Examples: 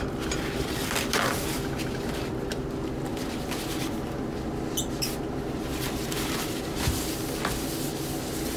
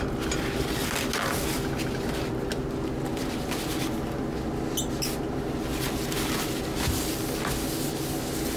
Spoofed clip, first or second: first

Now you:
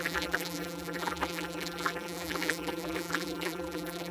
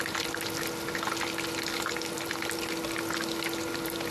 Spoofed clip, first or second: first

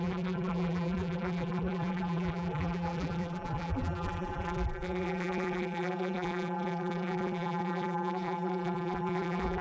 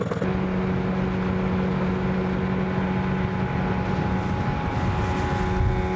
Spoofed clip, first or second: first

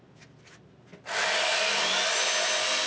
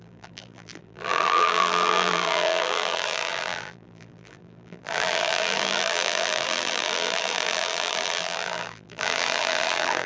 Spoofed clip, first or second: second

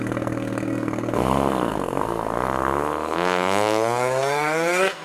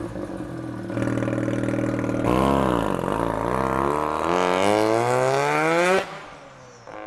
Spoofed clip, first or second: first